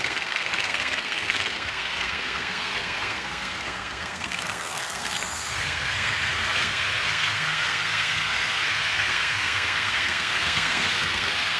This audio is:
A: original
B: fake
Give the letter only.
B